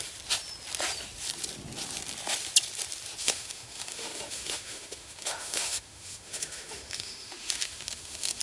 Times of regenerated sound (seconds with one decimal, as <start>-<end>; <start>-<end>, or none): 3.2-8.4